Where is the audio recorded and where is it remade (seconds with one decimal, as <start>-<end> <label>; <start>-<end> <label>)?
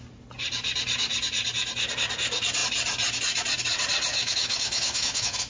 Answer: 0.0-4.1 recorded; 4.1-5.5 remade